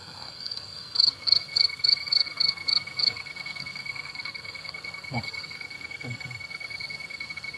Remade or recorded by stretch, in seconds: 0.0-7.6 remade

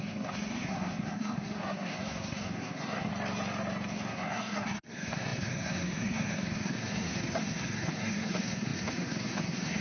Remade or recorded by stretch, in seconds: 0.0-3.1 remade; 3.1-3.9 recorded; 3.9-9.8 remade

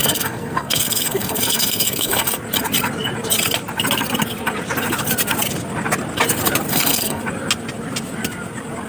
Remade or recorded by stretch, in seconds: 0.0-2.4 remade; 2.4-6.7 recorded; 6.7-7.2 remade; 7.2-8.9 recorded

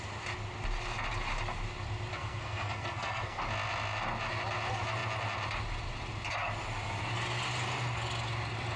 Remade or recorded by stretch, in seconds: 0.0-2.1 recorded; 2.1-3.4 remade; 3.4-8.8 recorded

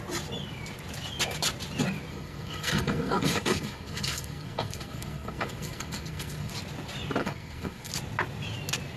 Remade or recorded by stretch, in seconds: 0.0-2.1 recorded; 2.1-6.5 remade; 6.5-7.2 recorded; 7.2-7.9 remade; 7.9-9.0 recorded